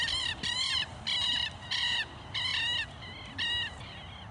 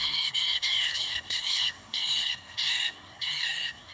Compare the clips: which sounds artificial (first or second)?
second